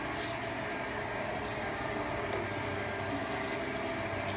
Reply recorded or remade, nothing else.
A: recorded